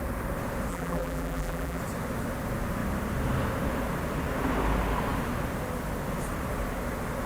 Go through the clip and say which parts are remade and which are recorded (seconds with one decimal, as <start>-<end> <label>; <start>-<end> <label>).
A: 0.0-0.7 recorded; 0.7-1.8 remade; 1.8-7.3 recorded